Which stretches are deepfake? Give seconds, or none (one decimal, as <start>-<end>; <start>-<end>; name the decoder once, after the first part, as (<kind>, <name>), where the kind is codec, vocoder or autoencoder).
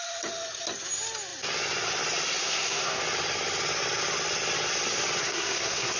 2.4-3.0 (codec, SNAC); 5.2-6.0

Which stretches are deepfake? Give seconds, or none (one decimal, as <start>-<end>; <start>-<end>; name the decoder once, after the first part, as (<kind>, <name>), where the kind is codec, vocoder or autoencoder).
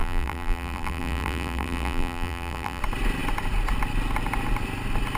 0.0-2.8 (vocoder, BigVGAN v2)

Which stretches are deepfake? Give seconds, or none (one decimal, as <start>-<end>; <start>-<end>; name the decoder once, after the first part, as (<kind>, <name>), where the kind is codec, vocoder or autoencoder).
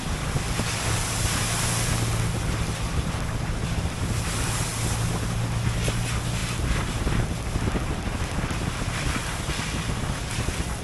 none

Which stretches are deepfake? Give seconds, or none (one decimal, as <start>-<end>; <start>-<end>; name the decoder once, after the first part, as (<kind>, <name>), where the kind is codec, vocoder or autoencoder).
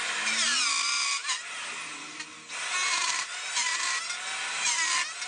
none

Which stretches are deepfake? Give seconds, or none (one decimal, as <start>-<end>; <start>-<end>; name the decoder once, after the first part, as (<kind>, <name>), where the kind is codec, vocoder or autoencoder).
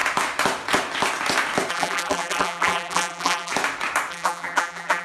1.7-3.5 (vocoder, BigVGAN v2); 4.1-5.0